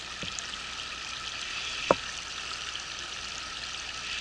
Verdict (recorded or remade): recorded